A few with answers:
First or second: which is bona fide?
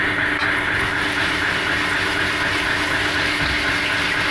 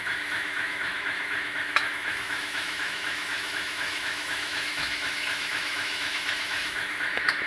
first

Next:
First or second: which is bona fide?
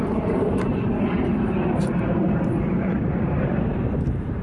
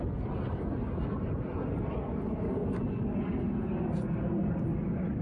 second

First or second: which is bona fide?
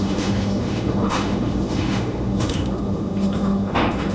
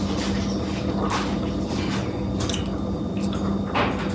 second